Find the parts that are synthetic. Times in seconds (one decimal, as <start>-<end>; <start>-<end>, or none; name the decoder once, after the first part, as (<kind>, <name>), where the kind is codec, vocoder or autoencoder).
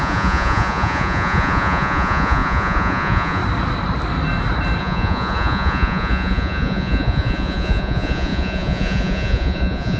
0.0-3.4 (vocoder, Vocos); 4.8-10.0